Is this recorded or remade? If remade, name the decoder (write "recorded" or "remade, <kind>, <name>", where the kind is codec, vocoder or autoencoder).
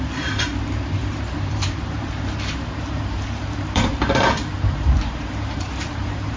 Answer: remade, vocoder, BigVGAN v2